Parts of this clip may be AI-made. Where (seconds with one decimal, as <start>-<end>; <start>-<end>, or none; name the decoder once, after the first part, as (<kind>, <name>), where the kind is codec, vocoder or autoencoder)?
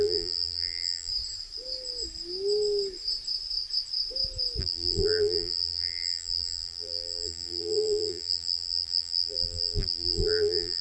0.0-1.1 (vocoder, BigVGAN v2); 4.6-10.8